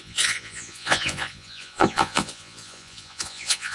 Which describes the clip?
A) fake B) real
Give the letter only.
A